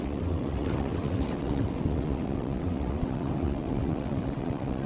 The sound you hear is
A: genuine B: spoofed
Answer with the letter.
B